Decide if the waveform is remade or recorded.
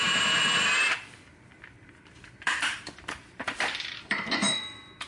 remade